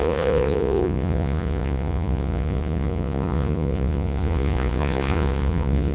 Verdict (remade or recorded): remade